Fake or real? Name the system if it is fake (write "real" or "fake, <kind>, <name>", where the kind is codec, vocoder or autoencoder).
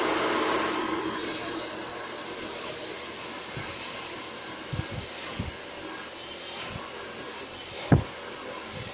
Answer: real